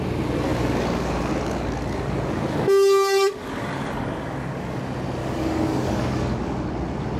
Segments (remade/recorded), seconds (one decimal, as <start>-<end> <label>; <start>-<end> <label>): 0.0-0.5 recorded; 0.5-4.8 remade; 4.8-5.2 recorded; 5.2-6.4 remade; 6.4-7.2 recorded